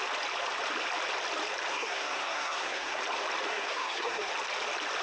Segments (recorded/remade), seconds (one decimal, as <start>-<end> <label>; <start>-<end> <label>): 0.0-1.7 recorded; 1.7-3.0 remade; 3.0-3.5 recorded; 3.5-4.3 remade; 4.3-5.0 recorded